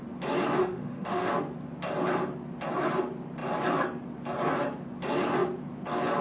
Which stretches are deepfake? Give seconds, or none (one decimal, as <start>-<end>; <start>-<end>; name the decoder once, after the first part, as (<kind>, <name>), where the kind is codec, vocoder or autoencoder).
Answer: 0.6-1.3 (autoencoder, DAC-VAE)